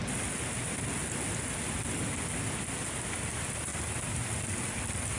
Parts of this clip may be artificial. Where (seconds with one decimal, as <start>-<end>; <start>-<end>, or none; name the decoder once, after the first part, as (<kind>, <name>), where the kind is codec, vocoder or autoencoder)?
3.7-5.2 (vocoder, BigVGAN v2)